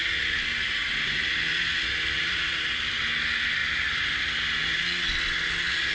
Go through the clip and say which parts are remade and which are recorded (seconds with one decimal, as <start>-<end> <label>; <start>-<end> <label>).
0.0-0.8 recorded; 0.8-3.0 remade; 3.0-3.6 recorded; 3.6-4.2 remade; 4.2-5.9 recorded